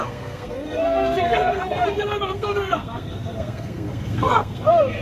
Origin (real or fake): fake